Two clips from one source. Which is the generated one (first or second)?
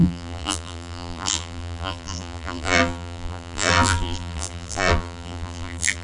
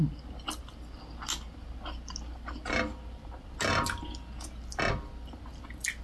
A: first